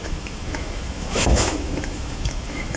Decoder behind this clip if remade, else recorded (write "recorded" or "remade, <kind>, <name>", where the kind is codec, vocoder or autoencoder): remade, autoencoder, DAC-VAE